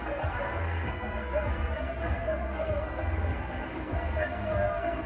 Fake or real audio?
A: fake